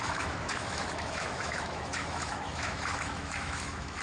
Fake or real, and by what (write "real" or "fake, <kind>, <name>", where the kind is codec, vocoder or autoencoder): fake, autoencoder, DAC-VAE